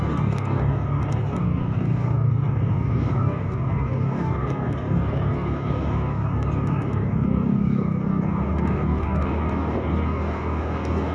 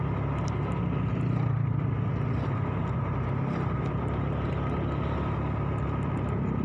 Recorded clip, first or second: second